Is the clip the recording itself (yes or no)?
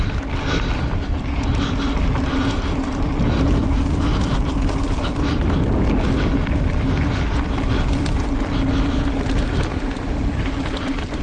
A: yes